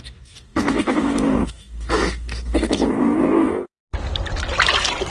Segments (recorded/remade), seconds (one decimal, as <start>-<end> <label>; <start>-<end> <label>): 0.0-3.8 remade; 3.8-5.1 recorded